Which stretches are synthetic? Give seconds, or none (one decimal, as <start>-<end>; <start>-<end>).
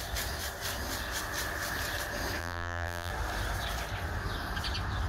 2.4-3.1